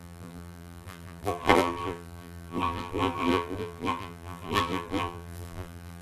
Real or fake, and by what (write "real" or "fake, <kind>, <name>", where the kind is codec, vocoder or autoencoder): fake, vocoder, BigVGAN v2